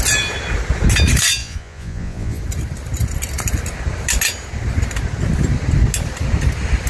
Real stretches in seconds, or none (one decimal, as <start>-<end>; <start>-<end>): 0.0-1.4; 2.4-6.9